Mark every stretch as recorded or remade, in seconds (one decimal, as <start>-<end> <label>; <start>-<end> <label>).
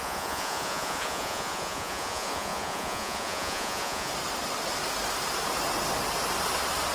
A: 0.0-4.1 remade; 4.1-6.9 recorded